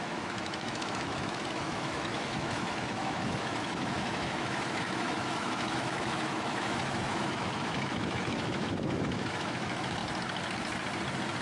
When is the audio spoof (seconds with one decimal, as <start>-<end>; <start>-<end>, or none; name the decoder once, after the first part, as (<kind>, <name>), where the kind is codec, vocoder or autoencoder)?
0.0-10.0 (autoencoder, DAC-VAE)